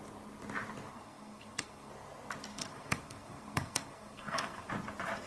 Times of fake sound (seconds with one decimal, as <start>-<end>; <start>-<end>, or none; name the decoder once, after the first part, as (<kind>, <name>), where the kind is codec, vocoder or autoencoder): 0.9-1.9 (codec, SNAC); 2.5-4.7